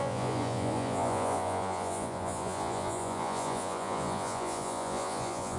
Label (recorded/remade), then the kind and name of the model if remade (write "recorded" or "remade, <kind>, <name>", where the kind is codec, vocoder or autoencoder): remade, vocoder, Vocos